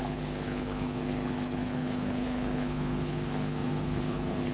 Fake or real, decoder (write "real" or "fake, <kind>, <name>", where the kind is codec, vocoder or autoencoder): fake, codec, HILCodec